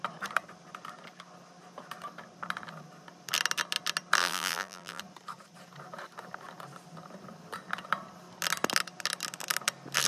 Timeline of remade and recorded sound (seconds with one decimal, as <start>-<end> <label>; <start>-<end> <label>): 0.0-4.2 recorded; 4.2-5.0 remade; 5.0-10.1 recorded